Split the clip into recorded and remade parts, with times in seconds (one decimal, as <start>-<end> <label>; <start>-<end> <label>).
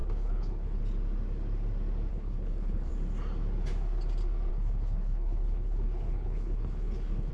0.0-0.8 remade; 0.8-2.1 recorded; 2.1-2.9 remade; 2.9-4.5 recorded; 4.5-7.3 remade